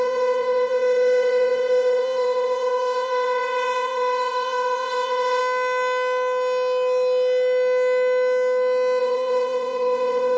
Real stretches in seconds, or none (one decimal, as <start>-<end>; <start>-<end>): 5.4-9.0